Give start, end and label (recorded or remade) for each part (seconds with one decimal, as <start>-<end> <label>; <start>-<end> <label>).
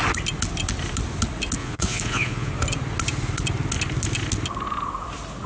0.0-1.6 recorded; 1.6-2.5 remade; 2.5-5.5 recorded